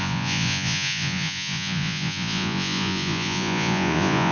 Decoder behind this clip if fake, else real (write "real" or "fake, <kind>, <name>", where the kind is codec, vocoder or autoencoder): fake, vocoder, Vocos